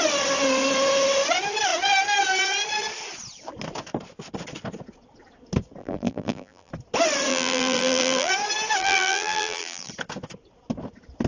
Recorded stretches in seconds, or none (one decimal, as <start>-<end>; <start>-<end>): 0.0-5.8; 6.7-7.3; 8.3-8.8; 9.9-11.3